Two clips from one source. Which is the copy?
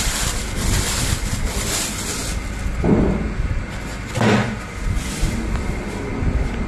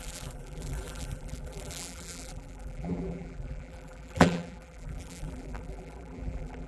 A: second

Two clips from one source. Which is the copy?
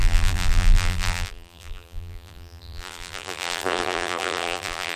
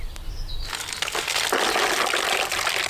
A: first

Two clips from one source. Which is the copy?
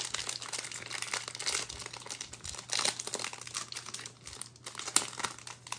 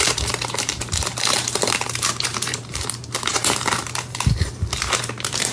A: second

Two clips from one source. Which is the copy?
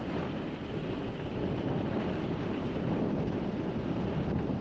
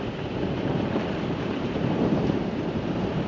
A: second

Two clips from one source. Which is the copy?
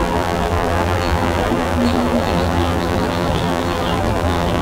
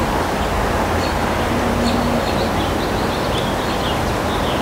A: first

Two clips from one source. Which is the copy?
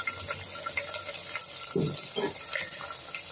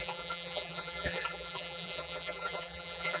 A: second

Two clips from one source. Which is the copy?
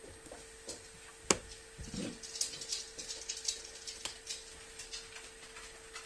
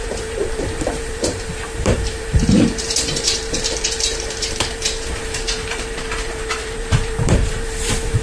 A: second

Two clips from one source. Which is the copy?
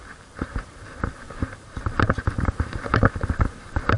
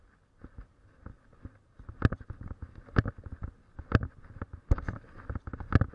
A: first